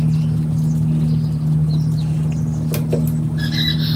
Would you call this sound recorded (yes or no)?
yes